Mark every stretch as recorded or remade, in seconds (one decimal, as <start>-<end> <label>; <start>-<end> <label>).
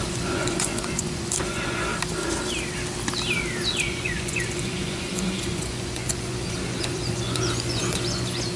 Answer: 0.0-1.9 remade; 1.9-3.7 recorded; 3.7-8.6 remade